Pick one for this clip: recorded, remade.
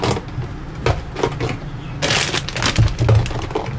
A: recorded